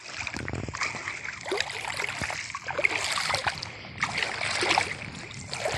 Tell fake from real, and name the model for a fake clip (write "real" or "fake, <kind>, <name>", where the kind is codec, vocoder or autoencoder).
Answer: real